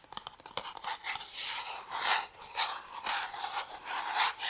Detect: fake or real real